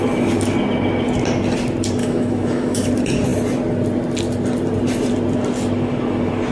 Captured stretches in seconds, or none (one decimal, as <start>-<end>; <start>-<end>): 0.0-2.0; 2.9-6.5